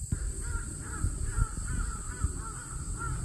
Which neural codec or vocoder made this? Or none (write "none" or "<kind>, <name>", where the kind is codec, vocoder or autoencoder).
none